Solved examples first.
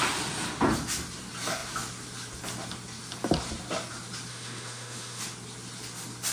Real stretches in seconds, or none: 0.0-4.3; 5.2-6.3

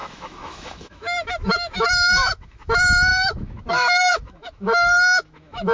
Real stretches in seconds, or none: none

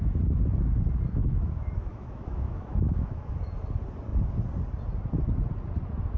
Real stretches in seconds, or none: 0.0-1.2; 3.5-6.2

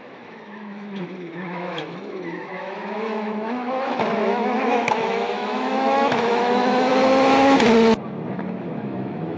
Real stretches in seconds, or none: 6.9-8.3